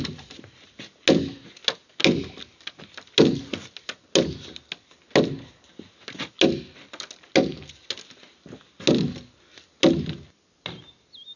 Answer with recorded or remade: recorded